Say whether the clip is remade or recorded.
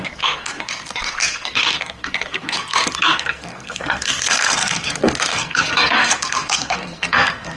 remade